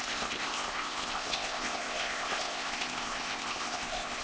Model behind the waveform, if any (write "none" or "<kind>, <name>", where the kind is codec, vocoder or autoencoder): codec, ZipCodec